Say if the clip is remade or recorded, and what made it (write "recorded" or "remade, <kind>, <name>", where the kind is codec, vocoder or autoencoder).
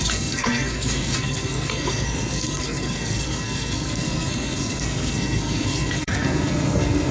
remade, codec, SNAC